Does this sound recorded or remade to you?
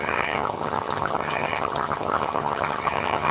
remade